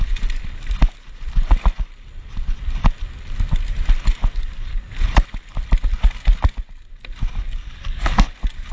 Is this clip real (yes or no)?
yes